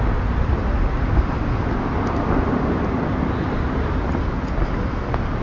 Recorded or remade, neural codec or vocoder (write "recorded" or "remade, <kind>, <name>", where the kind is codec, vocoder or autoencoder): recorded